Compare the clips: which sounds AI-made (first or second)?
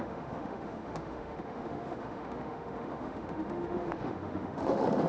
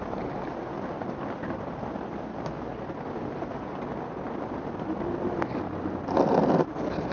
first